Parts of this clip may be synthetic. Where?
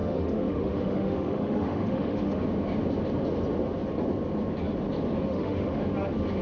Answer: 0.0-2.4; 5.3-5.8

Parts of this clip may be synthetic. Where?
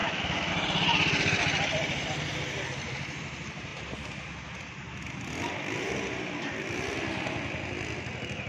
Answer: 0.0-0.5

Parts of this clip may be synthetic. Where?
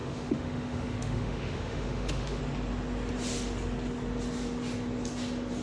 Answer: 0.0-2.4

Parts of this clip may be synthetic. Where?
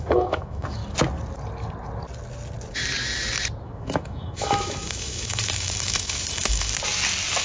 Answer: 0.0-0.8; 3.6-6.7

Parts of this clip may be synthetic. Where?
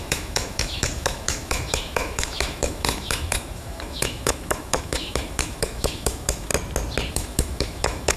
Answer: 0.0-6.5; 7.1-8.2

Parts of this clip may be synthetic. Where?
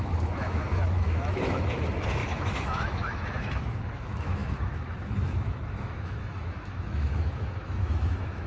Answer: 0.0-8.5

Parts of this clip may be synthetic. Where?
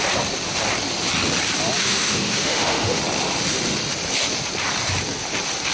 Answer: 1.8-3.0